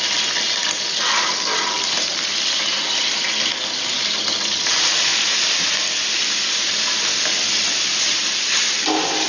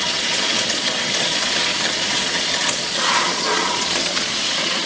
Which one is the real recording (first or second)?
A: first